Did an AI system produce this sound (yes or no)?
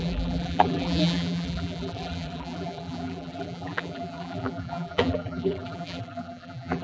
yes